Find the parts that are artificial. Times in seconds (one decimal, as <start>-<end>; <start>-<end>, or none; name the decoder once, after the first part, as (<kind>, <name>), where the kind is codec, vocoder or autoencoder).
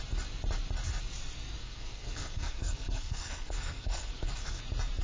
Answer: 1.6-4.6 (codec, SNAC)